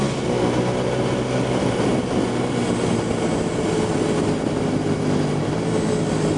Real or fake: real